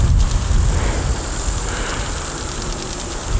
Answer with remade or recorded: recorded